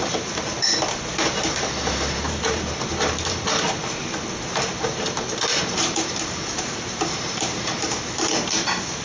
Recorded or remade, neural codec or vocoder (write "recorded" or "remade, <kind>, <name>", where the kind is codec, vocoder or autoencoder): remade, vocoder, BigVGAN v2